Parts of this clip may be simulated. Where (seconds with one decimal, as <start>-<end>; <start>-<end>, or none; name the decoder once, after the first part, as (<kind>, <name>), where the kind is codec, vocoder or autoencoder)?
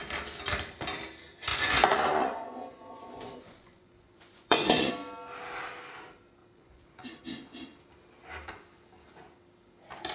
1.5-4.9 (vocoder, Vocos); 6.4-7.2